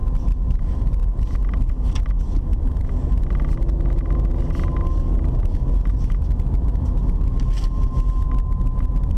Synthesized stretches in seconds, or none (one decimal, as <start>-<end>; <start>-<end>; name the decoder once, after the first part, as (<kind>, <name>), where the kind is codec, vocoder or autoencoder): 2.5-3.2 (vocoder, BigVGAN v2)